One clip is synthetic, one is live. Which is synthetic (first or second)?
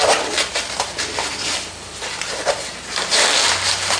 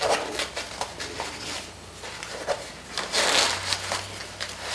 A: first